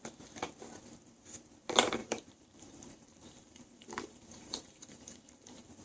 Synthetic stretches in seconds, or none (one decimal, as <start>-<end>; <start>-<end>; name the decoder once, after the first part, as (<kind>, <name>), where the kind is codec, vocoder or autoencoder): 2.0-5.8 (vocoder, BigVGAN v2)